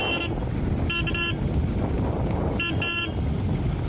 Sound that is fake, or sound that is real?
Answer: real